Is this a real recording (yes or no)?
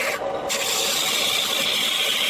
yes